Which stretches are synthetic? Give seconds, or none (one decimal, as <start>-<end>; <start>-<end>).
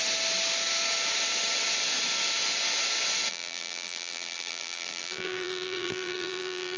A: 3.3-6.8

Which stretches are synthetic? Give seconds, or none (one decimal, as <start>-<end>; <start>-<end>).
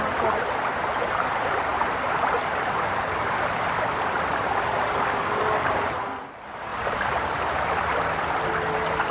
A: 1.7-5.6; 6.7-7.3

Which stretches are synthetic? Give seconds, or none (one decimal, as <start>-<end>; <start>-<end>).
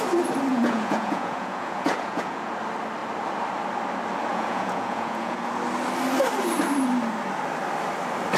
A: 0.5-2.5; 4.3-5.5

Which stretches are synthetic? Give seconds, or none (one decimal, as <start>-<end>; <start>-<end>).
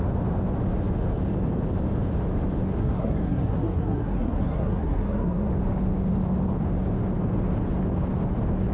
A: 2.8-5.5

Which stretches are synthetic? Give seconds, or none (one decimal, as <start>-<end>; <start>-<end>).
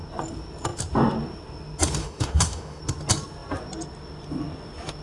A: 2.0-2.8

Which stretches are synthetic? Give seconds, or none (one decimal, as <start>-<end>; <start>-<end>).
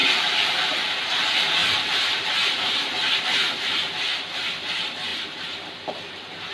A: 0.0-0.9; 5.1-5.9